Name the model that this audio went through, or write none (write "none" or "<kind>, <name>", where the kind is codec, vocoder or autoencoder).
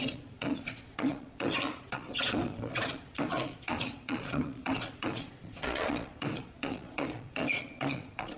vocoder, Vocos